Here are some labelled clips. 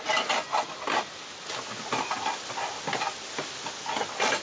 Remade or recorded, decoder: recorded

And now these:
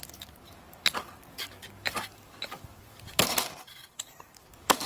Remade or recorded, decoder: remade, codec, DAC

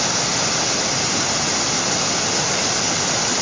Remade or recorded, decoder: recorded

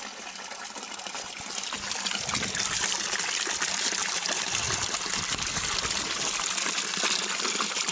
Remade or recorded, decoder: recorded